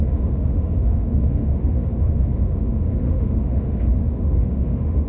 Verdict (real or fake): fake